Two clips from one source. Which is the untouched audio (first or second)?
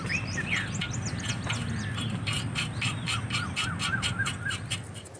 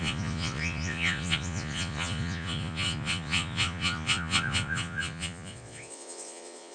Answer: first